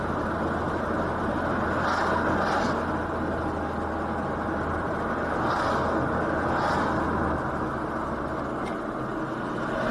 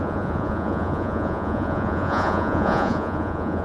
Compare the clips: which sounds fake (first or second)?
second